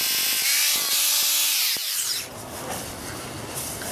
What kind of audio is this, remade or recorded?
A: recorded